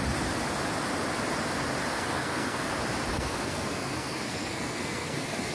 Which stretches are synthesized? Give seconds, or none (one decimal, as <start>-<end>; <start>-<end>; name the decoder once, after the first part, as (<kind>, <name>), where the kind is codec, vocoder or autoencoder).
1.9-2.7 (codec, SNAC); 3.1-5.5